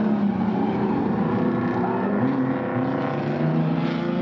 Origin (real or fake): real